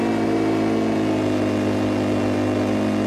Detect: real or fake real